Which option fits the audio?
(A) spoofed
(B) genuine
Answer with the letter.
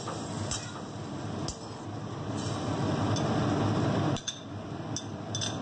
B